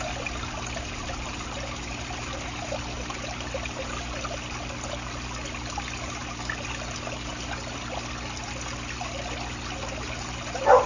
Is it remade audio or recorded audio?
recorded